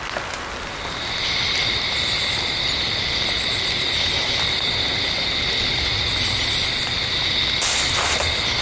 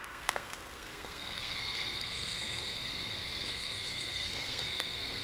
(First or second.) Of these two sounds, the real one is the first